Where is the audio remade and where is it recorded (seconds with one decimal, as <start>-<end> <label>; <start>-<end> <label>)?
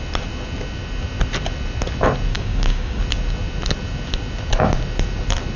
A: 0.0-2.3 recorded; 2.3-3.0 remade; 3.0-5.6 recorded